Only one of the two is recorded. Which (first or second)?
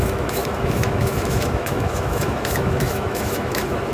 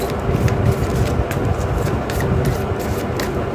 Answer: second